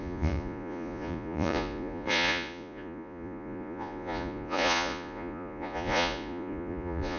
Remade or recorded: remade